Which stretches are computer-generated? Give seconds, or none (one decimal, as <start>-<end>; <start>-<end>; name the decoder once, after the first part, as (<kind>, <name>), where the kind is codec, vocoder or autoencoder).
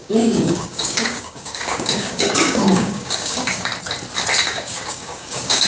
0.0-3.7 (codec, DAC); 4.4-5.7